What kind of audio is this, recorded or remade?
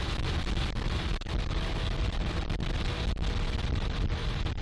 recorded